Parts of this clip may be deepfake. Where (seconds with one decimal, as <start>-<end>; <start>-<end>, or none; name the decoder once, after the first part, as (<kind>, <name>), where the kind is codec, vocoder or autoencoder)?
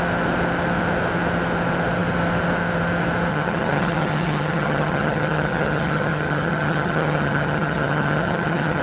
3.3-8.8 (vocoder, HiFi-GAN)